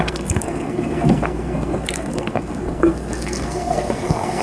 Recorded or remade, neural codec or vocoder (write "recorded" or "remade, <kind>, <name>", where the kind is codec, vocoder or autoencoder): remade, codec, SNAC